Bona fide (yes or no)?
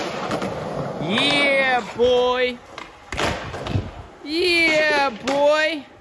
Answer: yes